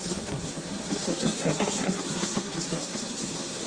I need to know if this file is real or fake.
fake